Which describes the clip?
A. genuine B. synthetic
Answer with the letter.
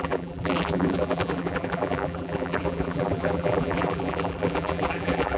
B